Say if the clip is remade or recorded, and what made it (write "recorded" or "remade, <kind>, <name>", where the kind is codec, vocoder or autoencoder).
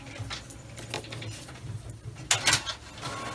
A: recorded